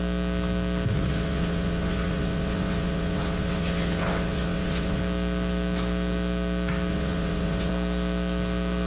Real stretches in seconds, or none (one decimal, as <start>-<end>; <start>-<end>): 0.0-0.9; 5.0-6.9; 7.7-8.9